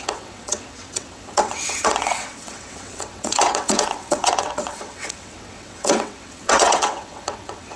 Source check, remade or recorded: remade